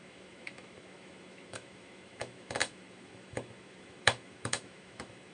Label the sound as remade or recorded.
remade